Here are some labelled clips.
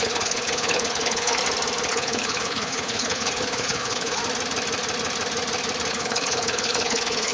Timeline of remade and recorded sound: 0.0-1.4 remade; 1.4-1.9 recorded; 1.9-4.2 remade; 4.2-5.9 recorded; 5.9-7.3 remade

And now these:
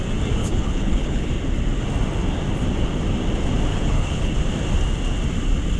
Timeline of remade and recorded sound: 0.0-0.4 recorded; 0.4-1.3 remade; 1.3-3.7 recorded; 3.7-4.3 remade; 4.3-5.8 recorded

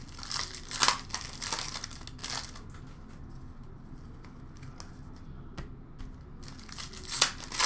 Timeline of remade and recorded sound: 0.0-7.7 recorded

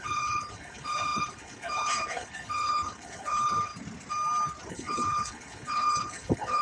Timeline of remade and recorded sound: 0.0-3.7 remade; 3.7-4.7 recorded; 4.7-6.6 remade

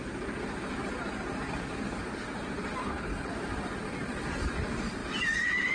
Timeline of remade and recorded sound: 0.0-2.8 recorded; 2.8-3.3 remade; 3.3-5.7 recorded